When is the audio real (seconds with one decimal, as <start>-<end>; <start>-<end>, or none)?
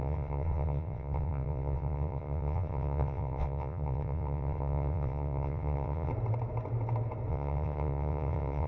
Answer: 6.1-7.3